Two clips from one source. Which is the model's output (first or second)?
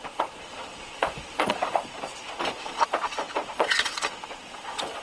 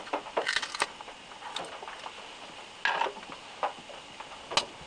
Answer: first